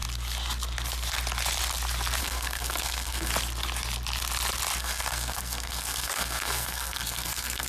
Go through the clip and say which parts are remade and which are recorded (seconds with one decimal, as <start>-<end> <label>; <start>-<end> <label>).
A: 0.0-2.2 recorded; 2.2-3.3 remade; 3.3-4.8 recorded; 4.8-7.7 remade